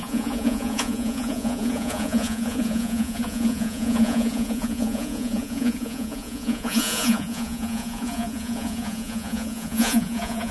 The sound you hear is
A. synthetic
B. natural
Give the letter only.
A